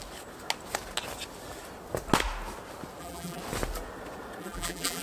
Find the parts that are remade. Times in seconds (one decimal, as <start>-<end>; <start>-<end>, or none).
3.0-3.4; 4.4-5.0